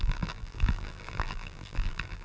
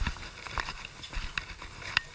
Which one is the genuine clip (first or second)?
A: second